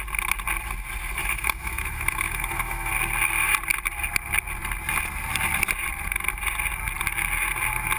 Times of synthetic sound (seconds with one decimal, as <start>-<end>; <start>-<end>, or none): 1.2-2.9